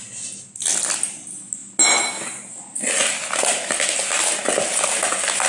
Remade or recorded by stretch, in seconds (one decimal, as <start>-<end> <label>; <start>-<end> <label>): 0.0-5.5 recorded